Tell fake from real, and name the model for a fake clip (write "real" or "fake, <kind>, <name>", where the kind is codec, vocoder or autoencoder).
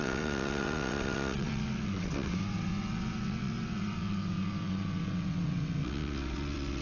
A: fake, vocoder, WaveNeXt